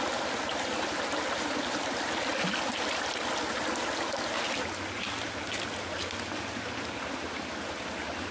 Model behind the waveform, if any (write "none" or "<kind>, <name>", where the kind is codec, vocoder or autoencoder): none